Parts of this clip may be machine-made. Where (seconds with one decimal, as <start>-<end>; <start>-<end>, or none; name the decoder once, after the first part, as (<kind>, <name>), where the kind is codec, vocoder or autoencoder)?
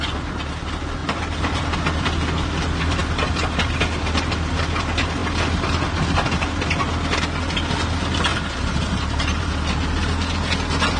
1.0-1.6 (vocoder, BigVGAN v2); 8.3-9.5